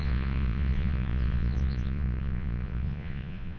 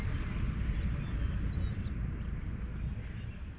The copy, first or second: first